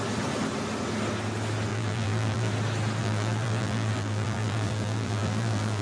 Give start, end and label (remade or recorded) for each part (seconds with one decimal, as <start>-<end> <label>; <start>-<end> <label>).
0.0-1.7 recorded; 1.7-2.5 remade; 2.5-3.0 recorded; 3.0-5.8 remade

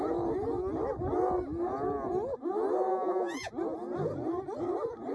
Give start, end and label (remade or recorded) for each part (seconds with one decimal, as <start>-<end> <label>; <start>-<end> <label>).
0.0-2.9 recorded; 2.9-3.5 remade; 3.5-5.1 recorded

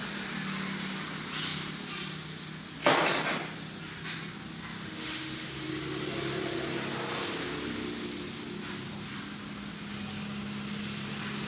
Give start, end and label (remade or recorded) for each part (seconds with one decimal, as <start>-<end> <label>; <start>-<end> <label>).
0.0-4.8 recorded; 4.8-5.7 remade; 5.7-11.5 recorded